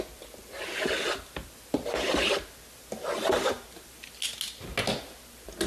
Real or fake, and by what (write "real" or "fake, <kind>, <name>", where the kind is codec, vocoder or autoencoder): real